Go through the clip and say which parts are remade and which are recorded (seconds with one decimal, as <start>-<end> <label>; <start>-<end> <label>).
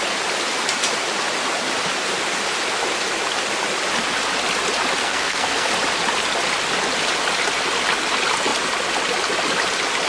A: 0.0-5.0 recorded; 5.0-5.7 remade; 5.7-10.1 recorded